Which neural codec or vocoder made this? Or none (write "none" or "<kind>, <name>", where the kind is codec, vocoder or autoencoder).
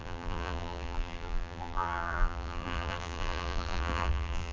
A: vocoder, BigVGAN v2